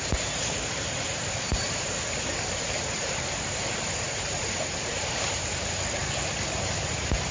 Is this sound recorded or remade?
remade